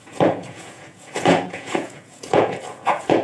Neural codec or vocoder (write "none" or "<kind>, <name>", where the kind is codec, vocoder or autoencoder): vocoder, Vocos